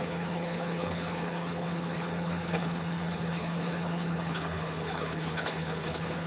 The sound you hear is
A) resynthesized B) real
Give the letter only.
A